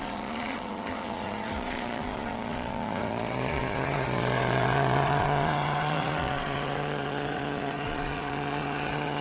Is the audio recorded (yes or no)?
no